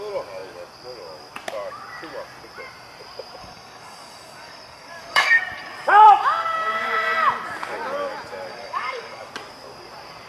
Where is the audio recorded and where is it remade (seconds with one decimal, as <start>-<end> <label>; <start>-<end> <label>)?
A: 0.0-3.4 recorded; 3.4-5.4 remade; 5.4-8.5 recorded; 8.5-9.3 remade; 9.3-10.3 recorded